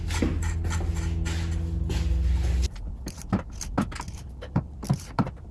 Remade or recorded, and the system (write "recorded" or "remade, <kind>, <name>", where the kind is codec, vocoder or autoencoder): recorded